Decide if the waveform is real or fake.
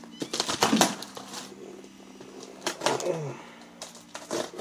real